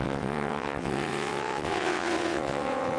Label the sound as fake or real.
fake